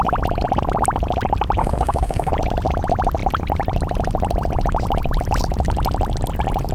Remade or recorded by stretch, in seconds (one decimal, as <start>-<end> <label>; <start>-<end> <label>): 0.0-1.6 recorded; 1.6-2.3 remade; 2.3-6.7 recorded

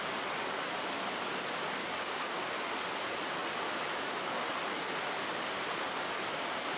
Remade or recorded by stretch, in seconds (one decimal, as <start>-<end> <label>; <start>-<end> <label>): 0.0-1.8 recorded; 1.8-2.7 remade; 2.7-6.8 recorded

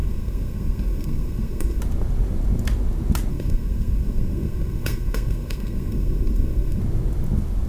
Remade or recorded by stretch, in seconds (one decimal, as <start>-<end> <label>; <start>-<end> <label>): 0.0-1.8 remade; 1.8-3.3 recorded; 3.3-6.8 remade; 6.8-7.7 recorded

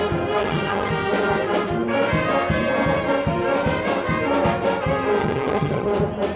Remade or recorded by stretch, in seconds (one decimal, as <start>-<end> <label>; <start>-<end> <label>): 0.0-0.4 recorded; 0.4-0.9 remade; 0.9-5.2 recorded; 5.2-5.9 remade; 5.9-6.4 recorded

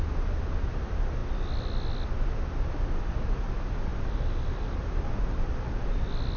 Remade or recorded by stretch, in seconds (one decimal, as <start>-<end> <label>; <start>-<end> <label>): 0.0-6.4 recorded

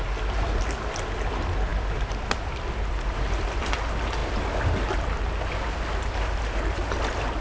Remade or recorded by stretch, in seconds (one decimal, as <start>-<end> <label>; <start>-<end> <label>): 0.0-7.4 recorded

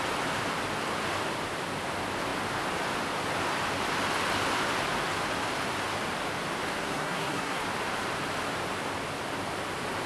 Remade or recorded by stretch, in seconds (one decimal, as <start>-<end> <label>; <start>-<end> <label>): 0.0-6.8 recorded; 6.8-7.6 remade; 7.6-10.1 recorded

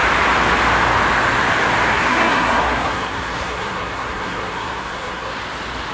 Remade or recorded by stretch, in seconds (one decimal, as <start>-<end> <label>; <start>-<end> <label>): 0.0-1.9 recorded; 1.9-5.3 remade; 5.3-5.9 recorded